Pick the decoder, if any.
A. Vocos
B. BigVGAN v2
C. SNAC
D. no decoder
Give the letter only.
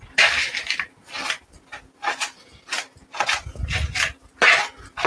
D